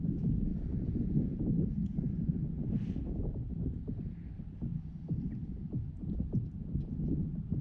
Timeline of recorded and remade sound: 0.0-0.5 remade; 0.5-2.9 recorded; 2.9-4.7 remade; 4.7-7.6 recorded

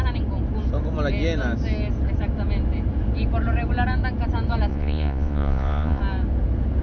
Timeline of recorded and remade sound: 0.0-4.7 recorded; 4.7-6.0 remade; 6.0-6.8 recorded

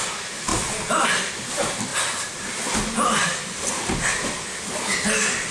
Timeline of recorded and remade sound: 0.0-5.5 recorded

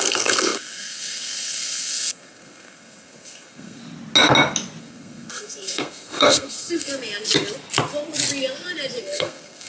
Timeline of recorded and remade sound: 0.0-3.8 remade; 3.8-4.8 recorded; 4.8-6.9 remade; 6.9-9.0 recorded; 9.0-9.7 remade

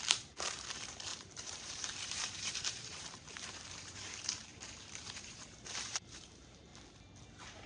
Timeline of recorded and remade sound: 0.0-6.7 remade; 6.7-7.7 recorded

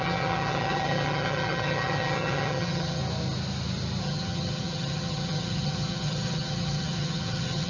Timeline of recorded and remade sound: 0.0-3.0 remade; 3.0-4.0 recorded; 4.0-7.7 remade

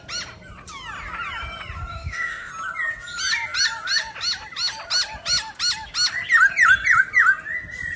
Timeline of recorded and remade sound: 0.0-1.9 recorded; 1.9-2.5 remade; 2.5-8.0 recorded